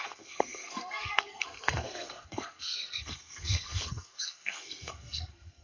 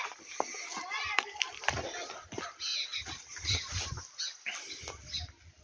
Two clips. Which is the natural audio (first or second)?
second